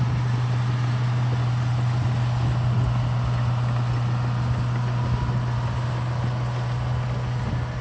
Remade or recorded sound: recorded